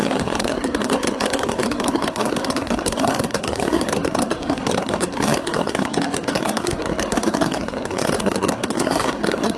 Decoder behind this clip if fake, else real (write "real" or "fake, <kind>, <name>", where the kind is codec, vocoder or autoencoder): fake, codec, SNAC